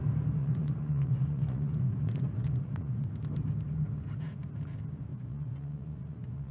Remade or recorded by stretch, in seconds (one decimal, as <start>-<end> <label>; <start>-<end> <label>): 0.0-0.4 recorded; 0.4-3.1 remade; 3.1-5.1 recorded; 5.1-6.5 remade